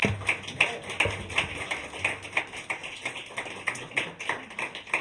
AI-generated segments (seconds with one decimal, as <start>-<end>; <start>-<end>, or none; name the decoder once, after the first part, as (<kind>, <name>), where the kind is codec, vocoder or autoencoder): 2.4-5.0 (vocoder, BigVGAN v2)